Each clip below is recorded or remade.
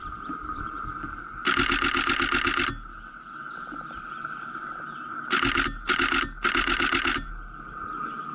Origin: recorded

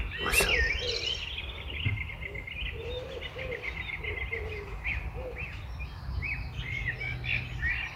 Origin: recorded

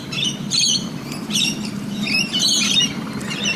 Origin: remade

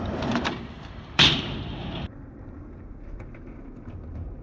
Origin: remade